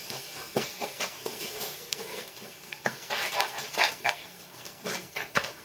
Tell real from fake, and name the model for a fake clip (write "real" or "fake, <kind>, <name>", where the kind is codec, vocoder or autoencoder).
fake, codec, SNAC